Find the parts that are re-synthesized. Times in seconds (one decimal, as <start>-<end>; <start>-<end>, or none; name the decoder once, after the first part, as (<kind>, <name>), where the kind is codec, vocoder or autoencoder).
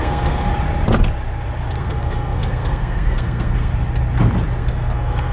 0.0-0.5 (codec, SNAC); 1.8-3.7; 4.6-5.3